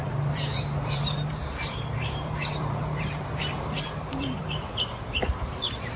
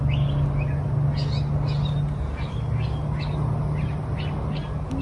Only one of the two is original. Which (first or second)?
second